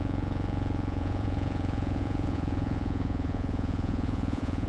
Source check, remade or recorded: remade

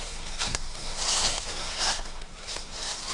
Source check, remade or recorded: remade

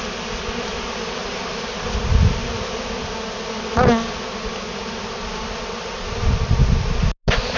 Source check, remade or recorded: recorded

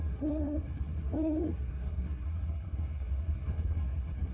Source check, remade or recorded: remade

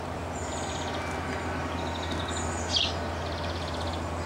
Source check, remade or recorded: recorded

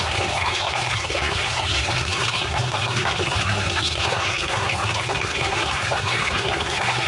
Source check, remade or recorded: remade